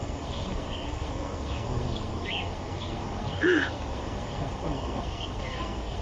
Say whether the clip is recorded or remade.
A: remade